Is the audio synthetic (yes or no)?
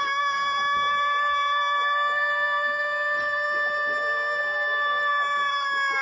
no